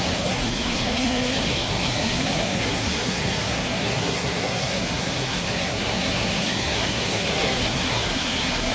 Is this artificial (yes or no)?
yes